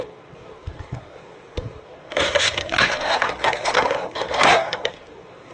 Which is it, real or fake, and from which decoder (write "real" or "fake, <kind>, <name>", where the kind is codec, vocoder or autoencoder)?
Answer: fake, codec, SNAC